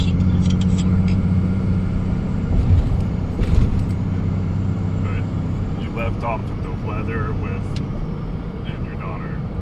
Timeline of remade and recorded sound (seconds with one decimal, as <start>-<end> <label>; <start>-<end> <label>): 0.0-6.4 remade; 6.4-7.7 recorded; 7.7-9.6 remade